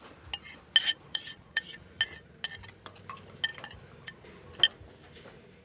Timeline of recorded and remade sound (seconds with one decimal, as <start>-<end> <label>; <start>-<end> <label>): 0.0-0.8 recorded; 0.8-2.0 remade; 2.0-5.6 recorded